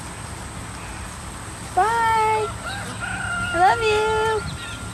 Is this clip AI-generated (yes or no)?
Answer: no